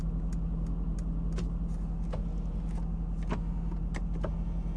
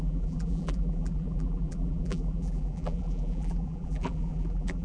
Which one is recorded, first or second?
first